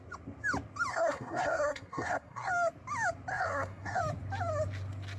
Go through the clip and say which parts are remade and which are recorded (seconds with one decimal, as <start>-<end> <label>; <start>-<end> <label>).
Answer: 0.0-0.9 recorded; 0.9-2.5 remade; 2.5-3.3 recorded; 3.3-4.0 remade; 4.0-5.2 recorded